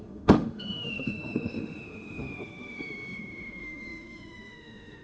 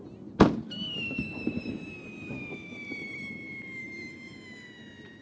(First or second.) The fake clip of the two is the first